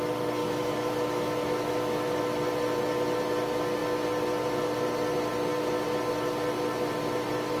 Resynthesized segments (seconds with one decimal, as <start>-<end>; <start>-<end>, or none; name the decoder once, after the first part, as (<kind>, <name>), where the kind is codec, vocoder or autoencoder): 0.4-2.2 (autoencoder, DAC-VAE)